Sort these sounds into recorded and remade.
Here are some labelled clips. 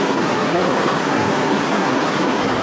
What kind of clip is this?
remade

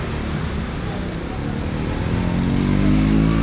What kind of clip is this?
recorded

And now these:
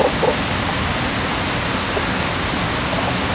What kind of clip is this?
recorded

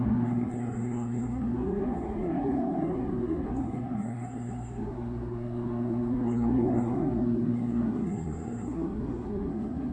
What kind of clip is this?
remade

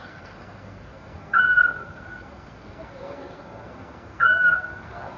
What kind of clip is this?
remade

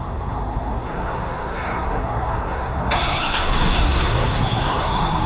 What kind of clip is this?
remade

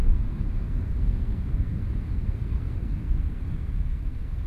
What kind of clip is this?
remade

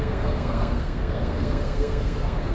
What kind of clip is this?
remade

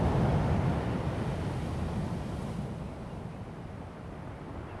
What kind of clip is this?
recorded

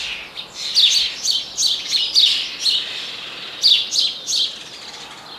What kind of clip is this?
recorded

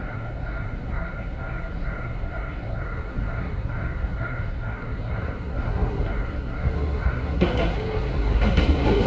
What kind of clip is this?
remade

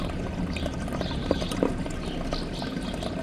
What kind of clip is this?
recorded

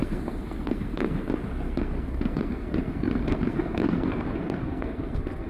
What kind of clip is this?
remade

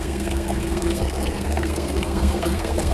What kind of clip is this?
remade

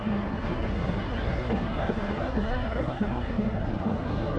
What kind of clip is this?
remade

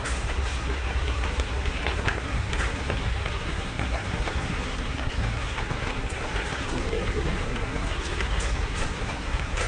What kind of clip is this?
remade